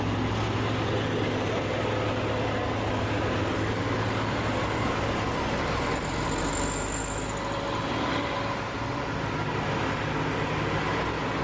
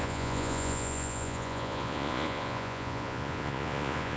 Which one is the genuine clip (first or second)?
first